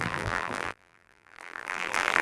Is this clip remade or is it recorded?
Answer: remade